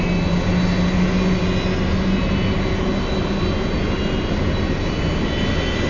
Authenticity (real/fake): real